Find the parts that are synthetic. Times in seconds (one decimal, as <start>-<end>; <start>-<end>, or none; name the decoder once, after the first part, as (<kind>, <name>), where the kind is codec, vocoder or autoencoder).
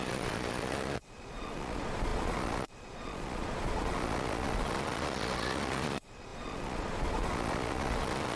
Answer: 0.0-8.4 (vocoder, Vocos)